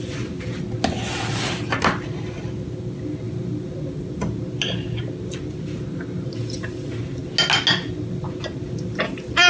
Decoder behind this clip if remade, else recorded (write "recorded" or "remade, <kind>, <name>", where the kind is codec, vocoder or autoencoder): recorded